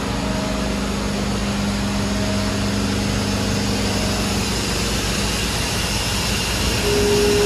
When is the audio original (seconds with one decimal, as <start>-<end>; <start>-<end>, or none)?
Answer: 0.0-7.5